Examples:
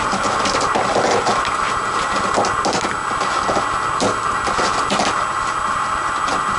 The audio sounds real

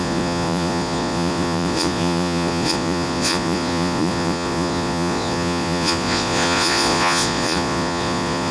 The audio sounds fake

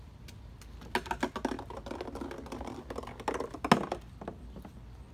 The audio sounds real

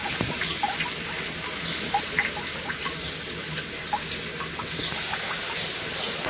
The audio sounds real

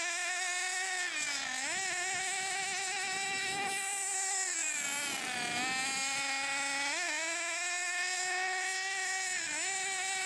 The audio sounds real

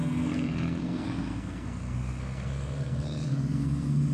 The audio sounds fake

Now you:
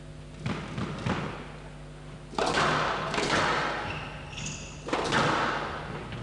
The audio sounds real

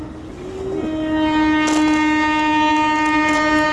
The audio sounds real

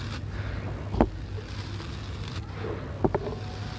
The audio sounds real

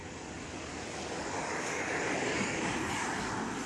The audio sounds fake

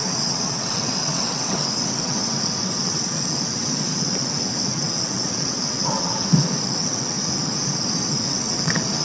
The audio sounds fake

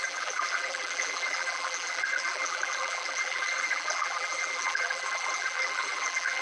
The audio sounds fake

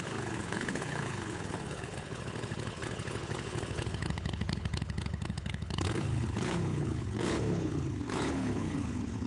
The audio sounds fake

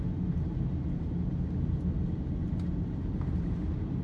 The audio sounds real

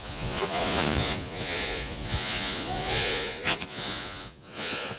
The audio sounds fake